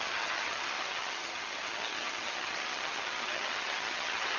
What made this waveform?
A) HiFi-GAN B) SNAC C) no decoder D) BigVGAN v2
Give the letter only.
A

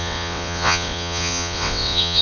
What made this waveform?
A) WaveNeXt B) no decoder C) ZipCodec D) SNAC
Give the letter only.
A